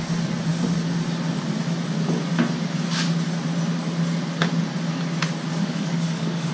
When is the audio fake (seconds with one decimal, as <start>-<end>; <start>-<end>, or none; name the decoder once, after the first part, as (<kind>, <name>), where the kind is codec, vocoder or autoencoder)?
5.5-6.5 (codec, DAC)